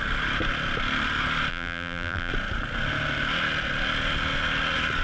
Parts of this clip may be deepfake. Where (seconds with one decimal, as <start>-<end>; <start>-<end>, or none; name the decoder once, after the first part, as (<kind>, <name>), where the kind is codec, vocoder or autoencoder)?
1.5-2.3 (vocoder, BigVGAN v2)